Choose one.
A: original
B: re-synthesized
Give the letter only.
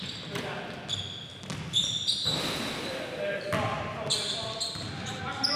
A